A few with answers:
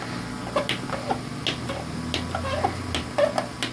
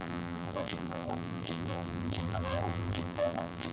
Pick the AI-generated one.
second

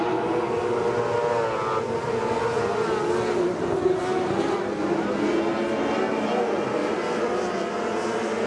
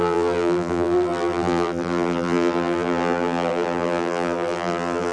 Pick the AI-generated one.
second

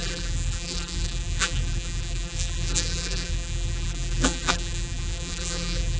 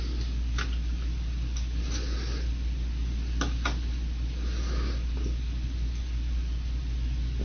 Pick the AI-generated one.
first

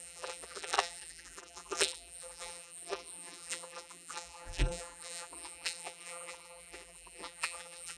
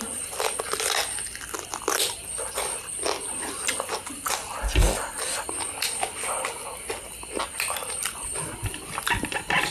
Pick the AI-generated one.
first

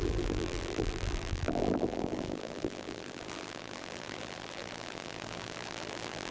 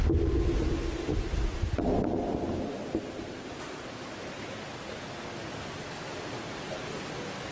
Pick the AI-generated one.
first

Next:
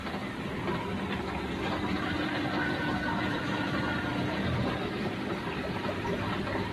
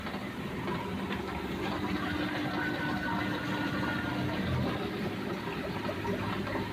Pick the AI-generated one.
first